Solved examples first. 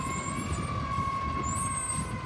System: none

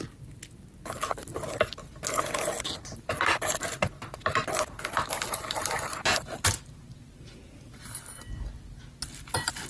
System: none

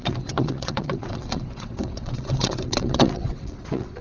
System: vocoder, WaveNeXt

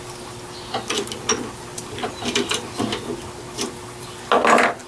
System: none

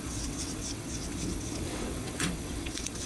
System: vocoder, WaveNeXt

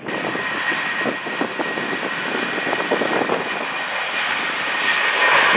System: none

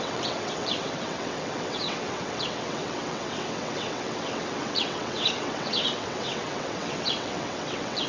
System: vocoder, WaveNeXt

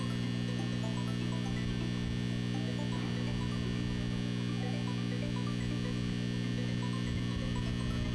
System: none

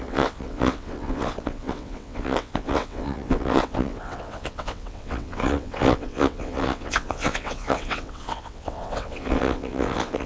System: vocoder, WaveNeXt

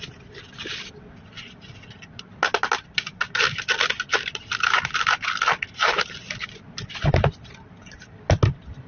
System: none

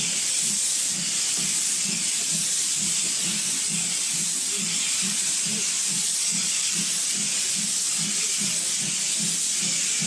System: none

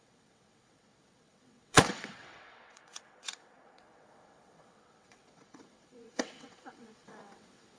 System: vocoder, WaveNeXt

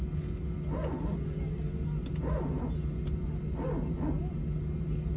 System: none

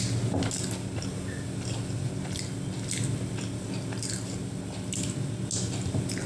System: none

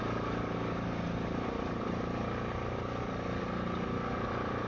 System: none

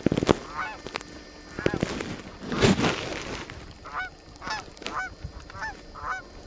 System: none